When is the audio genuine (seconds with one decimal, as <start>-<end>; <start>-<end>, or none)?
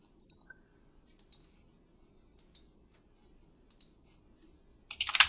1.6-3.2; 4.2-5.3